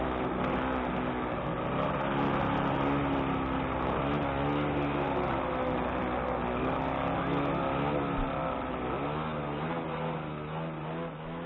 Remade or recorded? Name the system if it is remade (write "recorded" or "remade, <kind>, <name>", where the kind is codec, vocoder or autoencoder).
recorded